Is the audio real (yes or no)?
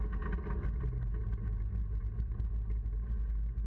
yes